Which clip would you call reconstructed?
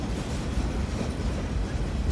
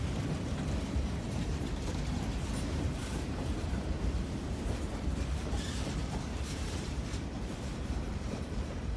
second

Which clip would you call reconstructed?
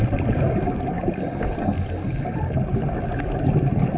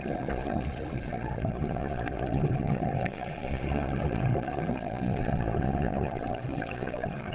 second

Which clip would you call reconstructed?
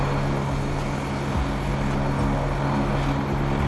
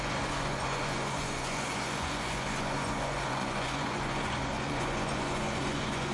second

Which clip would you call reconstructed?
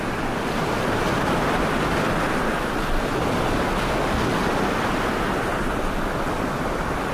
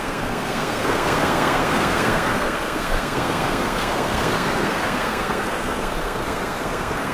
second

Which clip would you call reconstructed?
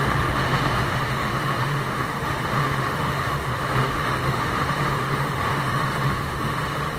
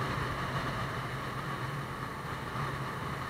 first